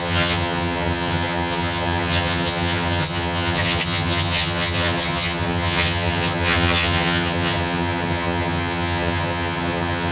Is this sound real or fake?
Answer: fake